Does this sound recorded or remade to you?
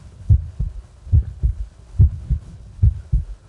remade